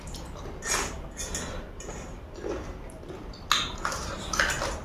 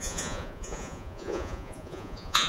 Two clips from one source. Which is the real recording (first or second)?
first